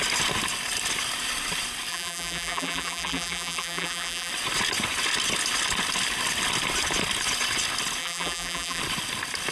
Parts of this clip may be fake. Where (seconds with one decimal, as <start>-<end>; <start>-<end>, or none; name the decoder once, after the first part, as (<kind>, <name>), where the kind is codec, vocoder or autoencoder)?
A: 1.9-4.3 (vocoder, BigVGAN v2); 8.0-8.8